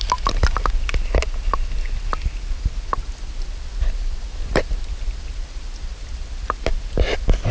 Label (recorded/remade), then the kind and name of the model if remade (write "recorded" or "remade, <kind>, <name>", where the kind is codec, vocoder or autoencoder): recorded